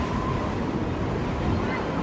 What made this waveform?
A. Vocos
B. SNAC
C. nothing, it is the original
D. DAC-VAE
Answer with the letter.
C